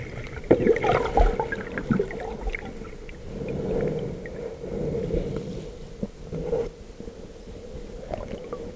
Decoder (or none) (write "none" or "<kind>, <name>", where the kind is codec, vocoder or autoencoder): none